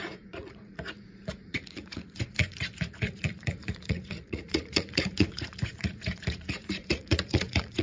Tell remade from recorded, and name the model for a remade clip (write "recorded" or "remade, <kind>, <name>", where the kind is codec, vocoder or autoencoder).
remade, vocoder, Vocos